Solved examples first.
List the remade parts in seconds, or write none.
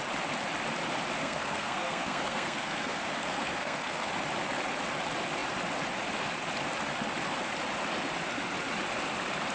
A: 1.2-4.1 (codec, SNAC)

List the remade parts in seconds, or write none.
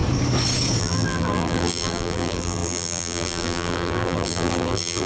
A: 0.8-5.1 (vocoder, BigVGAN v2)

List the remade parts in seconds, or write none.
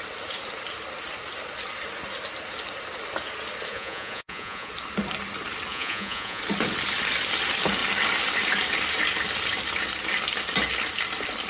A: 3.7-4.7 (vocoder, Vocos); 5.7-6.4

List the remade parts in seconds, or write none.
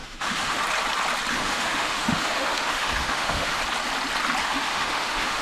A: 0.0-0.6 (autoencoder, DAC-VAE); 1.3-3.6; 4.4-5.4